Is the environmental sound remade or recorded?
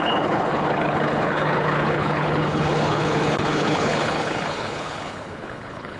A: remade